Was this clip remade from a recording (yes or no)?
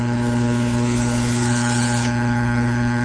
yes